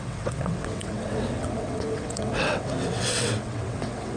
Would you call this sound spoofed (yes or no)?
yes